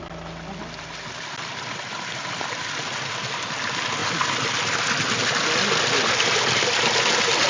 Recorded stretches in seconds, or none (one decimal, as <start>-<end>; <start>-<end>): 0.0-7.5